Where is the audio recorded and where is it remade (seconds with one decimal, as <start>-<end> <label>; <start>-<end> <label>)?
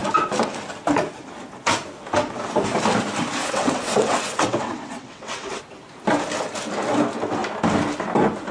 0.0-3.4 recorded; 3.4-5.6 remade; 5.6-8.5 recorded